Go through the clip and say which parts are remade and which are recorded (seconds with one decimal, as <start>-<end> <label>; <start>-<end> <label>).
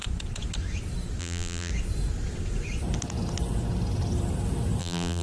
0.0-1.2 recorded; 1.2-1.7 remade; 1.7-4.8 recorded; 4.8-5.2 remade